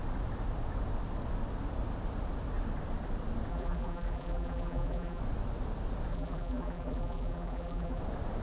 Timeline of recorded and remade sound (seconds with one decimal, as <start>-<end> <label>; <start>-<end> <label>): 0.0-3.5 recorded; 3.5-5.2 remade; 5.2-6.1 recorded; 6.1-8.0 remade; 8.0-8.4 recorded